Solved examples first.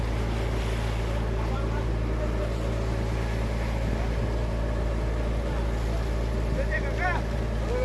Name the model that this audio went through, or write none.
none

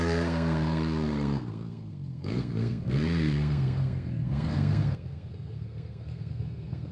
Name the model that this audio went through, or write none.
codec, SNAC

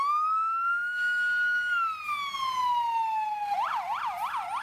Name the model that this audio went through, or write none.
none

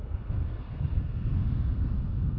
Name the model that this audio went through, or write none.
codec, SNAC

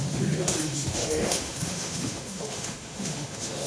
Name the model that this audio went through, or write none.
autoencoder, DAC-VAE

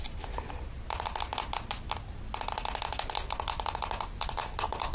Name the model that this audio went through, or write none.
none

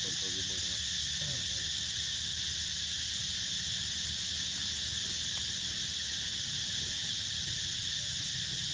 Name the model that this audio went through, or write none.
none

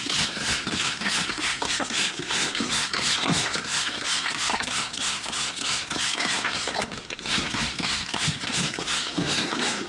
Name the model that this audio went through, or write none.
codec, SNAC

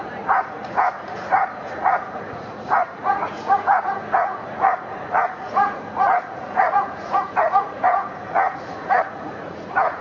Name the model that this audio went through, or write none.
vocoder, Vocos